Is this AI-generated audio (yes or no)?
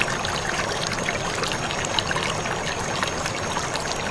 no